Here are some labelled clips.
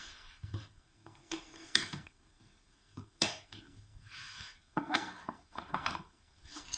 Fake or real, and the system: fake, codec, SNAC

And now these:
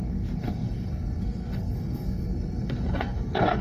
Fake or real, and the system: fake, codec, SNAC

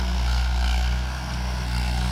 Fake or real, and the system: fake, codec, SNAC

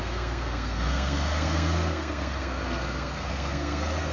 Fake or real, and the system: fake, codec, SNAC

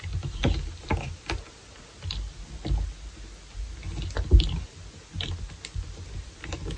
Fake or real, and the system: real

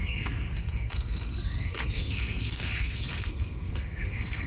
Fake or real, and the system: fake, codec, SNAC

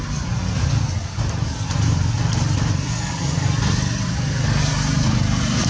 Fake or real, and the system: real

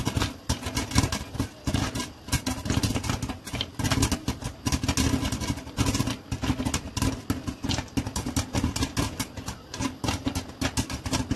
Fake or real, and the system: real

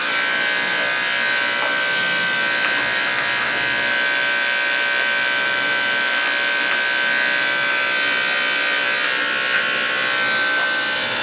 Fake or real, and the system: real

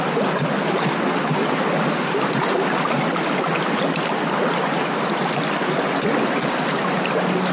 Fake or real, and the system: real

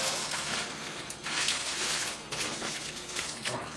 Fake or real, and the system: fake, codec, SNAC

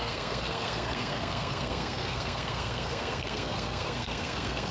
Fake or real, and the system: fake, codec, SNAC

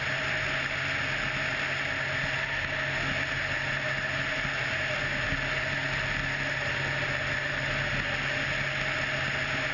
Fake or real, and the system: real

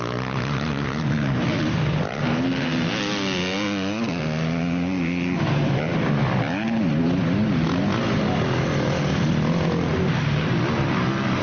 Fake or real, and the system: real